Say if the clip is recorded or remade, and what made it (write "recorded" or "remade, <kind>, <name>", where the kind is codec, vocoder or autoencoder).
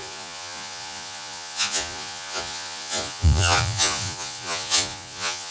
remade, vocoder, Vocos